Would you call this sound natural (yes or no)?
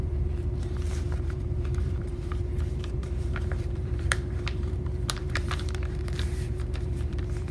no